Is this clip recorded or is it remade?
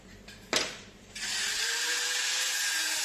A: remade